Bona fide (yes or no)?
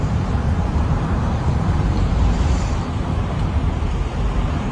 no